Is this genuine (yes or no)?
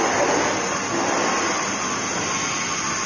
yes